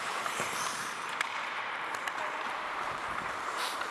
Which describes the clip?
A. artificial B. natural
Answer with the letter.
A